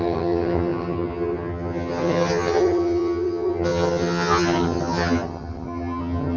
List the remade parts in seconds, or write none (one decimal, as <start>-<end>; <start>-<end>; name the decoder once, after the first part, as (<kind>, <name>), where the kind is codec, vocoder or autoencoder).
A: 0.0-6.4 (vocoder, HiFi-GAN)